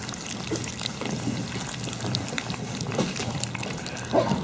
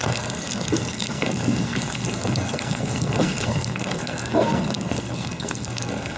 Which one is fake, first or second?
second